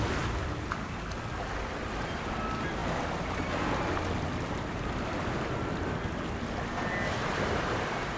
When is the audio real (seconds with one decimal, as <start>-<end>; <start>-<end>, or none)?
0.0-8.2